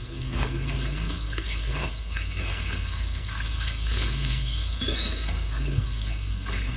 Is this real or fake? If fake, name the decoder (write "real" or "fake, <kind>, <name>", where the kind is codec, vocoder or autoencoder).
fake, codec, SNAC